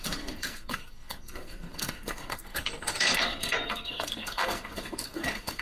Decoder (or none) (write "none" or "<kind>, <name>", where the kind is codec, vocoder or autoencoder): codec, SNAC